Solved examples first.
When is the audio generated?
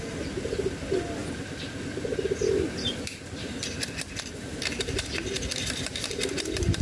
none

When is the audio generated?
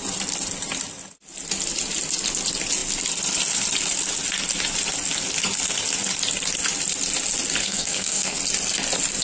7.6-8.4 (codec, SNAC)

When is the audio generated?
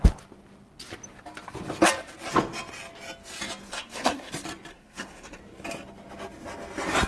3.7-4.3 (codec, SNAC); 4.7-5.4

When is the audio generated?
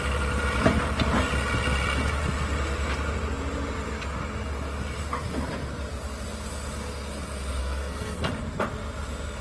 7.6-8.3 (codec, SNAC)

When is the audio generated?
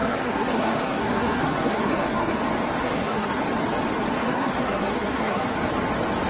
0.0-2.4 (codec, SNAC); 2.8-3.4; 4.2-5.5